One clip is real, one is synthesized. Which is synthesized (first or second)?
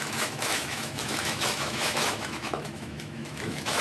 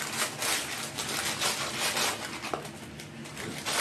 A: first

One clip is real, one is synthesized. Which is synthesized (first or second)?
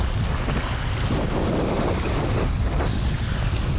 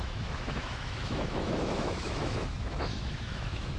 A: second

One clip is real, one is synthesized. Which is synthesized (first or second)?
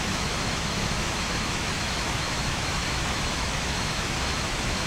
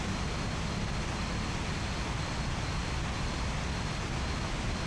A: first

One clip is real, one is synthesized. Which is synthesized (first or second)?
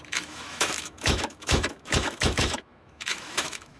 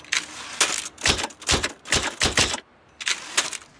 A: first